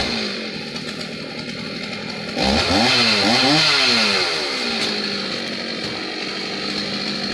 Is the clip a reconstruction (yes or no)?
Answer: no